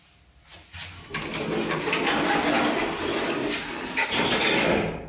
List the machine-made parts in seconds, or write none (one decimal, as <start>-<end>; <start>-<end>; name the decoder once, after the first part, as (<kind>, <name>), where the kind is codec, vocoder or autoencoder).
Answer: 3.4-4.1 (vocoder, BigVGAN v2)